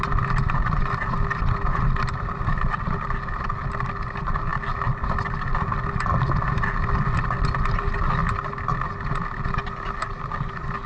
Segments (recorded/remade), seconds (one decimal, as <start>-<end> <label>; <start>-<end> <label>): 0.0-10.9 recorded